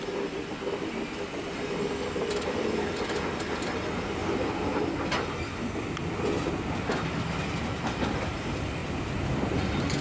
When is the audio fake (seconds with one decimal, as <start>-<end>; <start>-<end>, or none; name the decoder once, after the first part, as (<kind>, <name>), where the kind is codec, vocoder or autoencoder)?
4.2-4.8 (vocoder, BigVGAN v2)